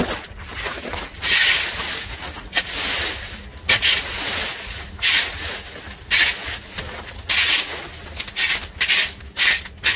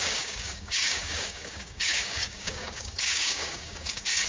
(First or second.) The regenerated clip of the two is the second